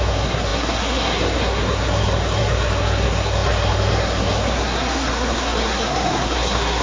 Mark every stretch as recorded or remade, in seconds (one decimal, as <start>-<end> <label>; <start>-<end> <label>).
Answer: 0.0-6.8 remade